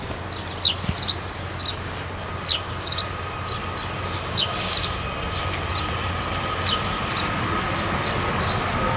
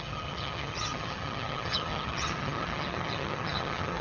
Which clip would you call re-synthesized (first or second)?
second